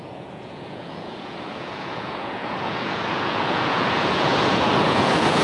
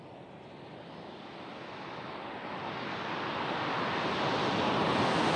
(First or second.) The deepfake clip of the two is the first